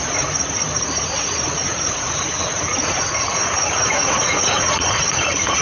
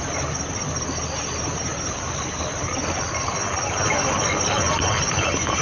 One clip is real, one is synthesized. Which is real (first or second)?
second